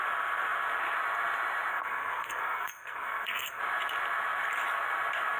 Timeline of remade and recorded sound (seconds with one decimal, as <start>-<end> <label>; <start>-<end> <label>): 0.0-1.7 recorded; 1.7-3.6 remade; 3.6-5.4 recorded